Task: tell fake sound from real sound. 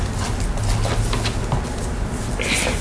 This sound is real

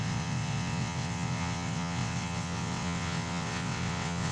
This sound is fake